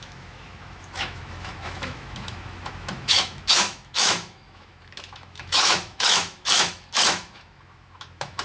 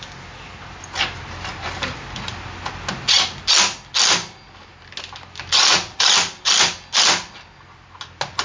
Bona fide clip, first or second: second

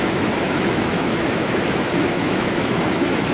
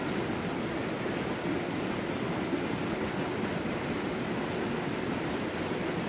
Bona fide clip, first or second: second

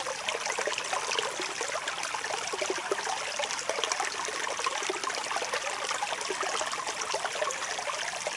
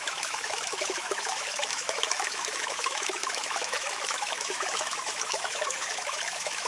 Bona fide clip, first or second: first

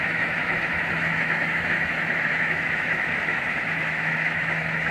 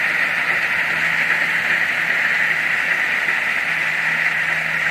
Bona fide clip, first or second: second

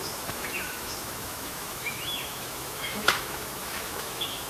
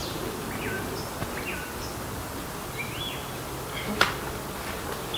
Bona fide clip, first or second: second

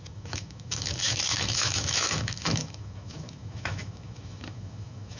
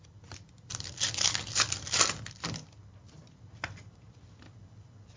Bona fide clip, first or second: second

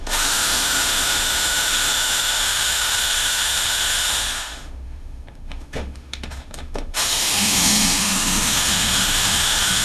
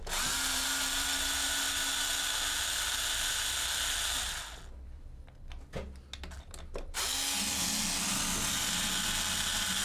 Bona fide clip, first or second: second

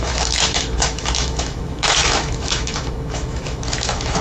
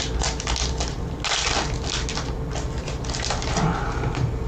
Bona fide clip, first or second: second